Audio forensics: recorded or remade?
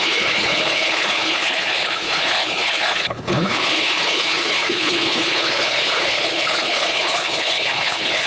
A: remade